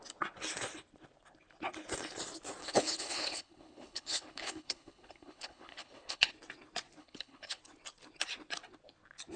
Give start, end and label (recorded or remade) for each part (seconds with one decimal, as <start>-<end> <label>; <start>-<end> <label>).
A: 0.0-2.6 recorded; 2.6-6.3 remade; 6.3-7.0 recorded; 7.0-7.6 remade; 7.6-9.4 recorded